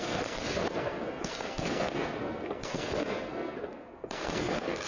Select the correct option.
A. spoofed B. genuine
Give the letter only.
A